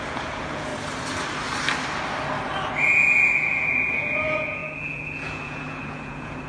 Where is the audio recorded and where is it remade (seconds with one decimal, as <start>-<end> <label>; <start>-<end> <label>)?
0.0-0.7 remade; 0.7-2.7 recorded; 2.7-6.5 remade